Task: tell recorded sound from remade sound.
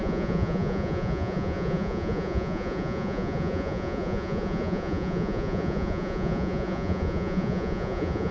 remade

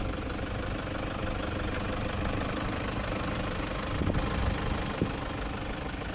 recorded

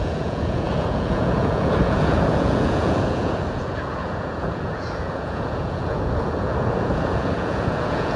remade